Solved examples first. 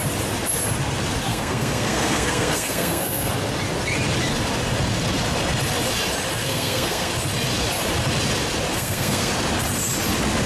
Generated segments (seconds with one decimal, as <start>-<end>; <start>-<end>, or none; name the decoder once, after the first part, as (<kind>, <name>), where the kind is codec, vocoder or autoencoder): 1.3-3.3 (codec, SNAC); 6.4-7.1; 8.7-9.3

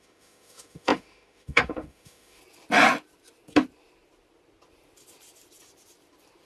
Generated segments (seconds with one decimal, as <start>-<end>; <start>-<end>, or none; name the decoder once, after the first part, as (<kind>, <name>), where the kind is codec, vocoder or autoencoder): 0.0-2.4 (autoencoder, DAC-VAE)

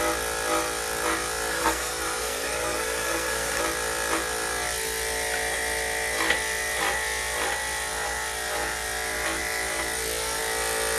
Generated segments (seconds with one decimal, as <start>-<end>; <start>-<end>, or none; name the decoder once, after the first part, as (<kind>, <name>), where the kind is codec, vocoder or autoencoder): 1.5-3.6 (codec, SNAC)

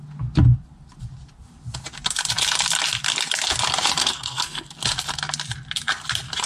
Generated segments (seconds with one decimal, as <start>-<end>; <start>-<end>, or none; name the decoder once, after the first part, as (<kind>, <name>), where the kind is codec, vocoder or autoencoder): 4.0-4.7 (codec, SNAC)

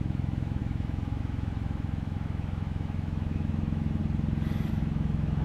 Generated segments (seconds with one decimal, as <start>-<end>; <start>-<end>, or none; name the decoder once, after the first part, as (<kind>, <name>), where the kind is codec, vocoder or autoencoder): 0.0-4.0 (autoencoder, DAC-VAE); 4.7-5.4